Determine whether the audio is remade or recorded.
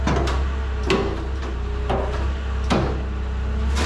recorded